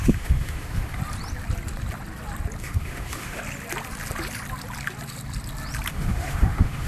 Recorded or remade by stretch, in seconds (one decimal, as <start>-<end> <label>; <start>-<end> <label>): 0.0-1.0 remade; 1.0-2.6 recorded; 2.6-3.4 remade; 3.4-5.9 recorded; 5.9-6.9 remade